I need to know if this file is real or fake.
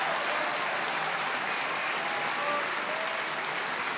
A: real